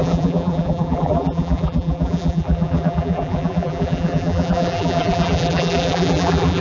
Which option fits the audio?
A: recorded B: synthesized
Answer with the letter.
B